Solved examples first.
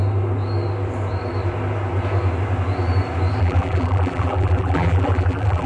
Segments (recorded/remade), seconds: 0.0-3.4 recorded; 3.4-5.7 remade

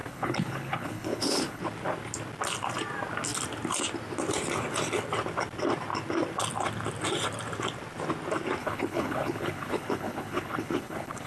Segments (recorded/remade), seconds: 0.0-1.6 remade; 1.6-8.6 recorded; 8.6-11.3 remade

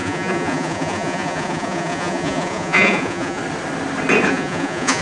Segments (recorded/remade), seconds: 0.0-3.4 remade; 3.4-4.3 recorded; 4.3-5.0 remade